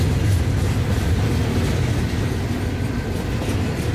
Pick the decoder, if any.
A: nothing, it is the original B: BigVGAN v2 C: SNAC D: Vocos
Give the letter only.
A